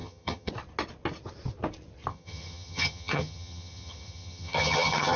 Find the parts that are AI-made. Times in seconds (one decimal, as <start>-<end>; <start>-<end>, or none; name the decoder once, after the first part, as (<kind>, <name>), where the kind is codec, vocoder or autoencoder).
0.0-0.5 (vocoder, HiFi-GAN); 2.1-5.2